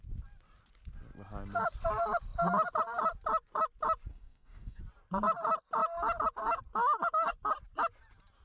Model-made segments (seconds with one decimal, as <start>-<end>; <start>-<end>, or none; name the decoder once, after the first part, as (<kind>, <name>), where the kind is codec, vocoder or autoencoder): 4.1-4.8 (codec, DAC)